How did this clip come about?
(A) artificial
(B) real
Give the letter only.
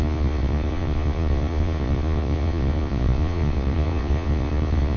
A